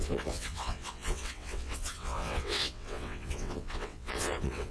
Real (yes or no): no